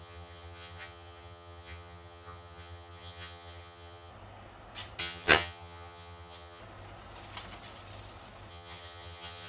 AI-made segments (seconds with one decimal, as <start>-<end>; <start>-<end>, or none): 0.0-4.1; 5.0-6.6; 8.5-9.5

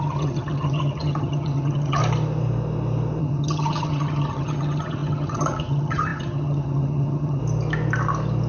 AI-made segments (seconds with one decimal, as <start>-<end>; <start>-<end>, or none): 0.0-2.0; 3.2-7.4

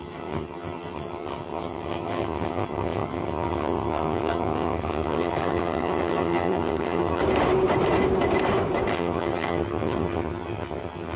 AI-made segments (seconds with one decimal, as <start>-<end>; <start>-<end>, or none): 0.0-7.2; 8.9-11.2

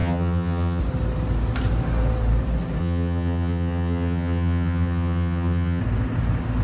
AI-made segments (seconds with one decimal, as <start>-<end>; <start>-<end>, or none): 0.0-0.8; 2.8-5.8